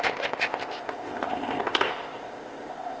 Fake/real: fake